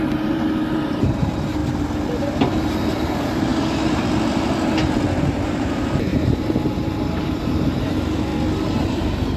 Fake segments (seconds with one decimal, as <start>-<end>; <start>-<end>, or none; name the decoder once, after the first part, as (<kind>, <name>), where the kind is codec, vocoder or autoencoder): 0.0-1.6 (vocoder, BigVGAN v2); 2.6-3.5; 5.2-8.3; 8.9-9.4